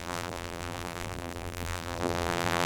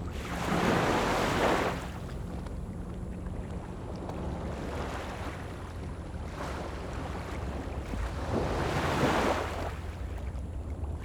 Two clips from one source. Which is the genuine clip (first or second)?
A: second